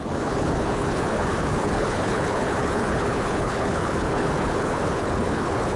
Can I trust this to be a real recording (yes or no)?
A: no